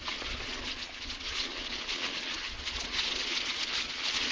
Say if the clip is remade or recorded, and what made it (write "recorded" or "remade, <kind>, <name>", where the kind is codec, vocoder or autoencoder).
remade, vocoder, Vocos